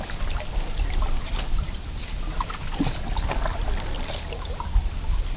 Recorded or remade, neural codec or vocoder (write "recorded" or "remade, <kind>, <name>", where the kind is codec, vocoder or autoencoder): recorded